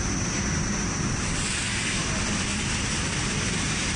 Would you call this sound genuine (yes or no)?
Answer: no